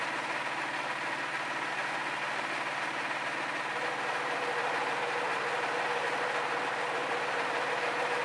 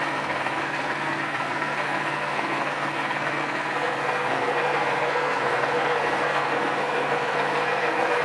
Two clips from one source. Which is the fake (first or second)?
second